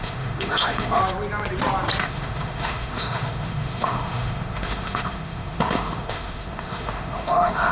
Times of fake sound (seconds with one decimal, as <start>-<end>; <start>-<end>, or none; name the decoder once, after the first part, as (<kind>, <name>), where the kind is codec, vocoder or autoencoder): 0.0-1.0 (autoencoder, DAC-VAE); 2.0-7.7